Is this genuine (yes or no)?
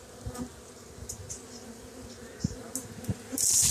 yes